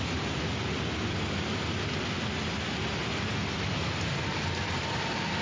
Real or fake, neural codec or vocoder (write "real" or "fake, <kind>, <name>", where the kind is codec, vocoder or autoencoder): real